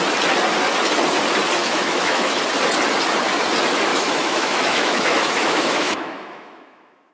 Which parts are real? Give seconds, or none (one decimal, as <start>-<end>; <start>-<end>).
0.0-1.6; 2.4-3.9